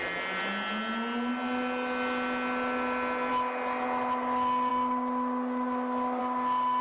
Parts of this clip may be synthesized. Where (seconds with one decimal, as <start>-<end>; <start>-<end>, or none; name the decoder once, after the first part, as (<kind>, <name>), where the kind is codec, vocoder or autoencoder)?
none